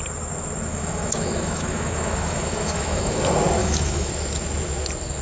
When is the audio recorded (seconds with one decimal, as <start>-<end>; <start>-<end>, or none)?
0.0-0.7; 3.2-3.6; 4.1-5.2